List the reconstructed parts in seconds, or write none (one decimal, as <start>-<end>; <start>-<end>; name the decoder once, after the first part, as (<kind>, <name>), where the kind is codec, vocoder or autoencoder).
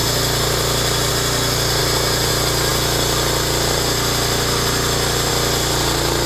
none